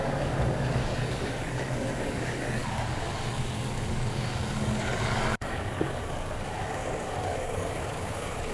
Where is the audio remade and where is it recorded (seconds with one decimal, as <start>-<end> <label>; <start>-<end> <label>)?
0.0-8.5 remade